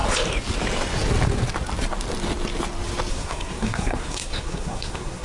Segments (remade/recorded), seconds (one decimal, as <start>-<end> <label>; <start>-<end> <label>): 0.0-3.1 recorded; 3.1-5.2 remade